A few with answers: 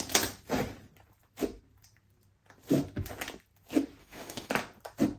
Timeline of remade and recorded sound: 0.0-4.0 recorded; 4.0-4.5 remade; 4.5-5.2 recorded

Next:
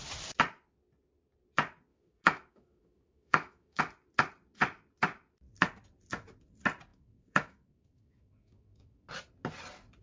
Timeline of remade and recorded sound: 0.0-1.9 recorded; 1.9-3.8 remade; 3.8-6.9 recorded; 6.9-9.1 remade; 9.1-10.0 recorded

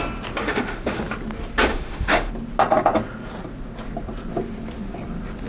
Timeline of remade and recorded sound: 0.0-0.4 recorded; 0.4-1.0 remade; 1.0-1.7 recorded; 1.7-2.3 remade; 2.3-5.5 recorded

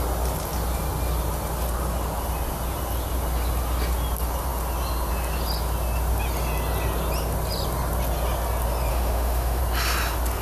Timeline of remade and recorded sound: 0.0-8.9 recorded; 8.9-9.6 remade; 9.6-10.4 recorded

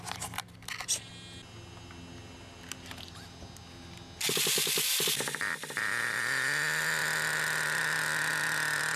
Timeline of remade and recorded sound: 0.0-9.0 recorded

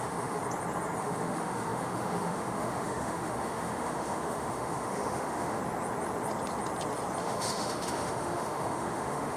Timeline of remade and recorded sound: 0.0-0.4 remade; 0.4-1.0 recorded; 1.0-5.6 remade; 5.6-7.2 recorded; 7.2-9.4 remade

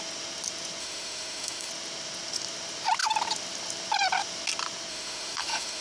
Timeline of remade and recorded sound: 0.0-0.8 recorded; 0.8-1.7 remade; 1.7-4.9 recorded; 4.9-5.8 remade

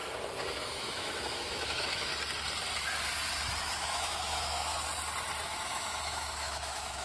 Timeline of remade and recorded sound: 0.0-0.6 recorded; 0.6-2.1 remade; 2.1-3.6 recorded; 3.6-4.7 remade; 4.7-5.4 recorded; 5.4-7.0 remade